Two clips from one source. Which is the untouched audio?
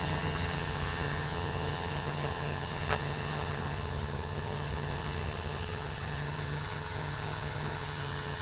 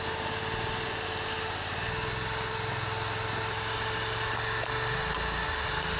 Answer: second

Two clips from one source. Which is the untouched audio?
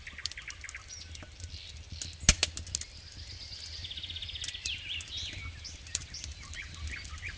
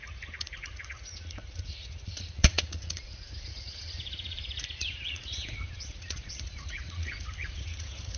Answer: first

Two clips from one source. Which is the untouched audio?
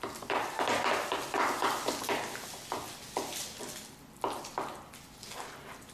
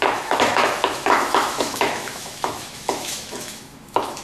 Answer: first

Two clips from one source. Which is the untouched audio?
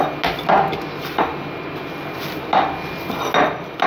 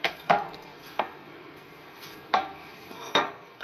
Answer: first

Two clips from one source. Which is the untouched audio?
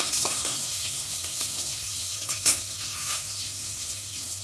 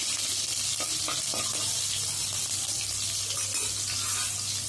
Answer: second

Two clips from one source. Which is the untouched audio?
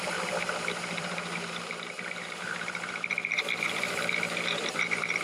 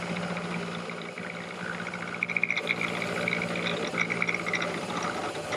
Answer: second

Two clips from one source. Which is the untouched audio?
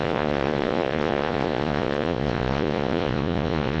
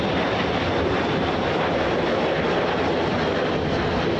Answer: second